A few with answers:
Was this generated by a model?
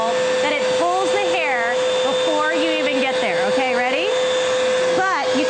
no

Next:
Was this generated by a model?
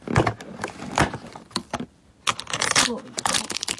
no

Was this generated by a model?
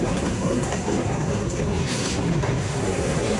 yes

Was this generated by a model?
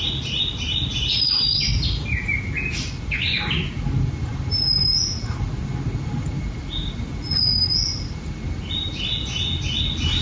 no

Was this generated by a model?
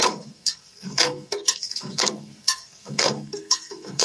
yes